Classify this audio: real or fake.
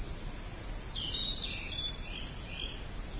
real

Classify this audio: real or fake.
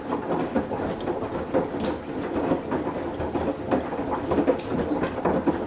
real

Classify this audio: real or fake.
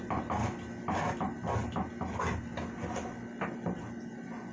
real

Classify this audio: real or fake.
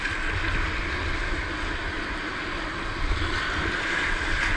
real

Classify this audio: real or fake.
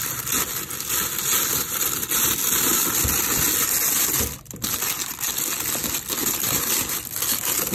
real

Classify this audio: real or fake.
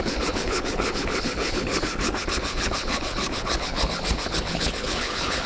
fake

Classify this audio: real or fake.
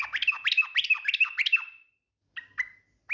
real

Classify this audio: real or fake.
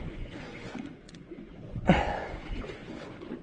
fake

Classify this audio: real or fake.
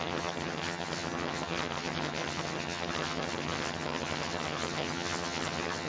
fake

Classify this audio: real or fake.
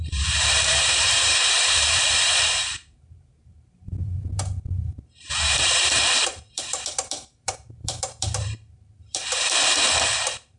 fake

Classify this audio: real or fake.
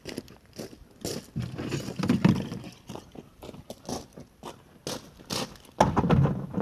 real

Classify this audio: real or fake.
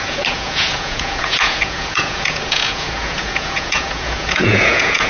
fake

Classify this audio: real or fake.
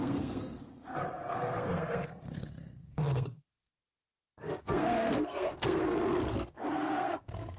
fake